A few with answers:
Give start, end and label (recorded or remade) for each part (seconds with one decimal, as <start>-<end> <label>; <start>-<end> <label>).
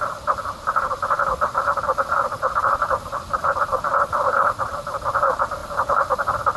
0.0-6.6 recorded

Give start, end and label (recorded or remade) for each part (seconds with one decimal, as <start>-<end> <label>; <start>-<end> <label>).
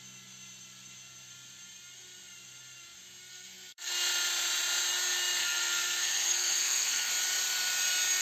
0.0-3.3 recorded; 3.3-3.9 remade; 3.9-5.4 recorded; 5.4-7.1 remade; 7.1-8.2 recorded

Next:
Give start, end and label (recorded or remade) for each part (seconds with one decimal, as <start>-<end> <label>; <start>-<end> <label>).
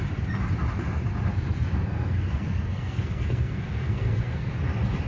0.0-1.7 recorded; 1.7-4.5 remade; 4.5-5.1 recorded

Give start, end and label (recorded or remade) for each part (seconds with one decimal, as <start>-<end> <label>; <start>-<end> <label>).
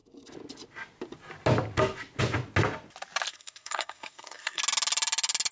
0.0-3.3 recorded; 3.3-4.6 remade; 4.6-5.5 recorded